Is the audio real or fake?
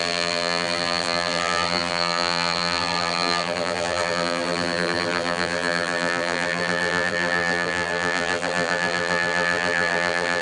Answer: fake